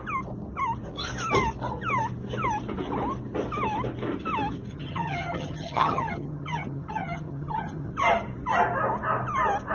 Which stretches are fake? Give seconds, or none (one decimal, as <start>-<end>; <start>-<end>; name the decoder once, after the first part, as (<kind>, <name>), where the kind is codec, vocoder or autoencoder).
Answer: 4.7-7.9 (vocoder, HiFi-GAN)